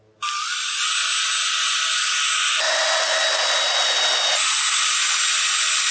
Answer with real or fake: real